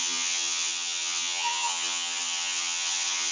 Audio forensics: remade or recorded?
remade